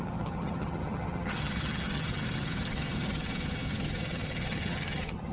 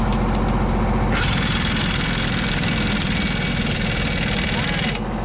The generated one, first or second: first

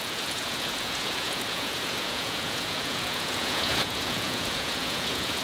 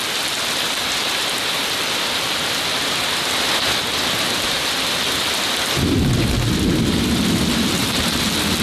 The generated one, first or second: first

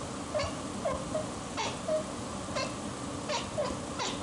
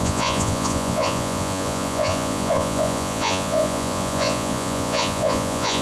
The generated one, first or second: second